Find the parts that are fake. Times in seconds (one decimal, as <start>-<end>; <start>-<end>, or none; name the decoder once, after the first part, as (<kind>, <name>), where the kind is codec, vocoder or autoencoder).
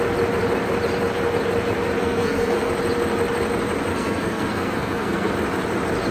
2.0-2.7 (codec, SNAC); 3.9-5.3